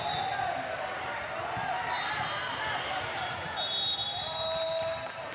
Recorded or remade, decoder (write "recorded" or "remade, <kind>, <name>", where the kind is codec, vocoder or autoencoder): recorded